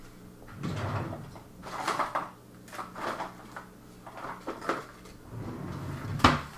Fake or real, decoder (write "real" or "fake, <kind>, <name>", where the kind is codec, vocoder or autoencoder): real